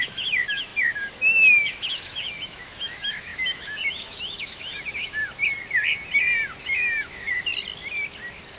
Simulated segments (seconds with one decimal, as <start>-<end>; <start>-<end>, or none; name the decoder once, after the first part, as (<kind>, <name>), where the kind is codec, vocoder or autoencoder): 0.0-5.2 (autoencoder, DAC-VAE); 6.6-7.5